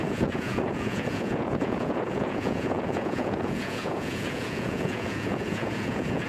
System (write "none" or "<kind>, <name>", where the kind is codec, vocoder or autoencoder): vocoder, Vocos